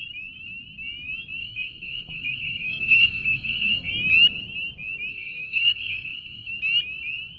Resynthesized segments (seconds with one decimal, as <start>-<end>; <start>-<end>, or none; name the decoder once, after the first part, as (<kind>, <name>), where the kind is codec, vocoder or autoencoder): 1.4-3.9 (codec, SNAC); 5.1-6.5